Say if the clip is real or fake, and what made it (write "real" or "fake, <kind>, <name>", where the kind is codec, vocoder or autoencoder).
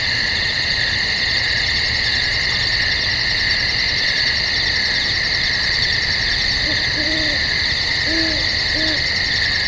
real